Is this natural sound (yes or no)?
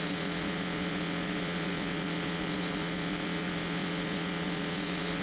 no